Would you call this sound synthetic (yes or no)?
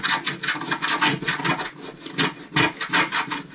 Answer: no